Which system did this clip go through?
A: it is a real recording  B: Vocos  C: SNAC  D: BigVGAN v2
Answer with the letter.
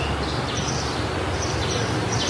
A